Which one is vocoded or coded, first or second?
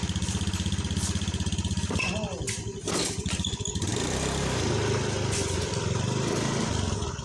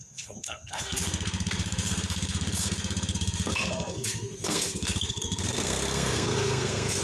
second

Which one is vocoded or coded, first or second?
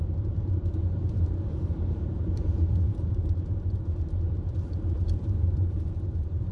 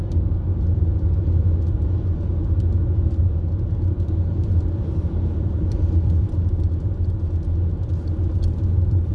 first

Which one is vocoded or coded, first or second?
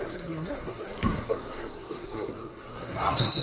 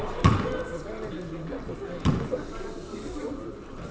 first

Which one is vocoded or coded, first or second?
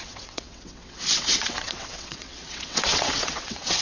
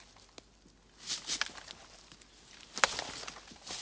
first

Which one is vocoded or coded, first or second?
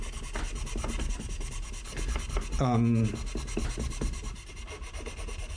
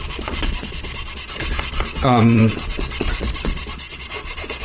second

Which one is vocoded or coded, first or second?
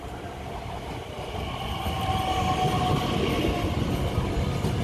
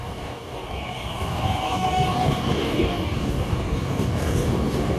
second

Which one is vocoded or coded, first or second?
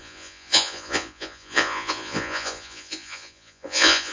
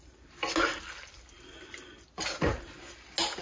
first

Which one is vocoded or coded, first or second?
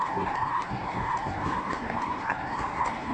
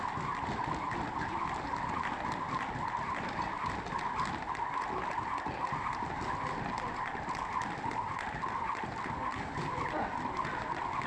first